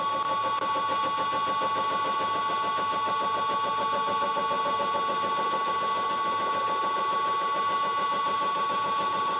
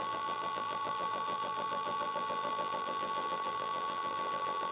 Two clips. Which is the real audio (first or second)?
first